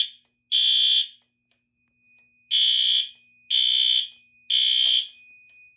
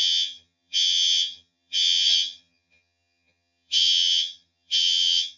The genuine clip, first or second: first